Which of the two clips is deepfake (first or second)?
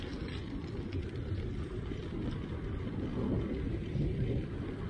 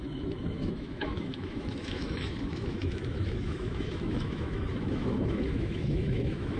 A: second